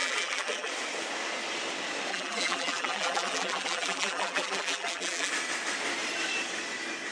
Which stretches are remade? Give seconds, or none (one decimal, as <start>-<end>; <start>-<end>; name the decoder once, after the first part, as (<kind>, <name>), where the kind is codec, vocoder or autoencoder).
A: 0.0-0.7 (vocoder, BigVGAN v2); 2.1-5.3